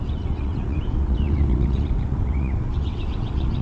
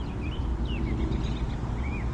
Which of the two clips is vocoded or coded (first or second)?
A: first